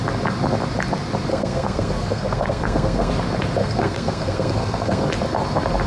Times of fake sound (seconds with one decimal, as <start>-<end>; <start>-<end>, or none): 1.3-3.1; 3.6-5.1